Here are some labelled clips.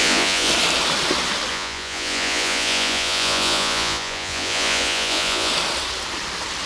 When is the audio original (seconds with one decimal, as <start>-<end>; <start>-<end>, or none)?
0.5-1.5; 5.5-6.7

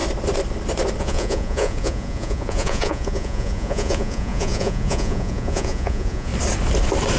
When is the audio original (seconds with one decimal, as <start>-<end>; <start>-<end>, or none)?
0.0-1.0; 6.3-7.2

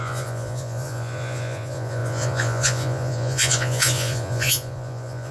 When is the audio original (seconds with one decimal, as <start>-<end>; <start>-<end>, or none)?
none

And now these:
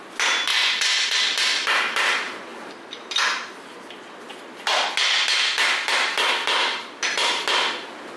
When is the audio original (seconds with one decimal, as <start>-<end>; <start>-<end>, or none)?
0.0-0.5; 1.2-8.2

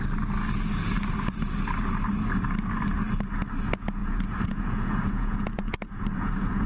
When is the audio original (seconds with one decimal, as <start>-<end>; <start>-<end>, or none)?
0.0-4.0

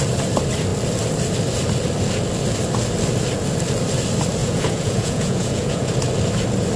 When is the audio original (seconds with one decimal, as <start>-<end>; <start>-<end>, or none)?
0.0-4.4; 5.9-6.8

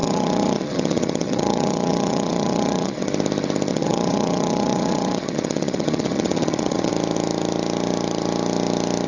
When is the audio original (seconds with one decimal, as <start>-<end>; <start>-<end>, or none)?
3.1-3.7; 6.9-9.1